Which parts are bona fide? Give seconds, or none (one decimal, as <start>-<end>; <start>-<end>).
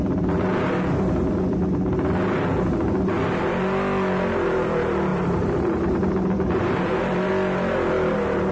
0.0-5.1; 7.3-8.5